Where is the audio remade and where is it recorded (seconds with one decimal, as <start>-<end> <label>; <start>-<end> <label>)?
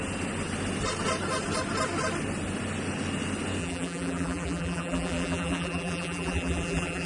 0.0-3.6 recorded; 3.6-7.1 remade